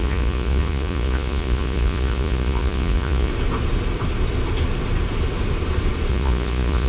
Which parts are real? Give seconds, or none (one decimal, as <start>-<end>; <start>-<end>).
3.3-6.1